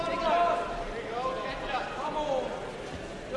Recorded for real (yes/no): yes